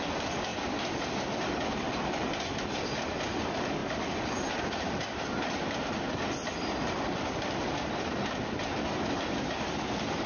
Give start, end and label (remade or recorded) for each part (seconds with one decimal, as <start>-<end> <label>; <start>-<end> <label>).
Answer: 0.0-10.3 recorded